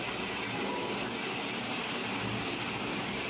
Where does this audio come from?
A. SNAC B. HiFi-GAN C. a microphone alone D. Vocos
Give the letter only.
C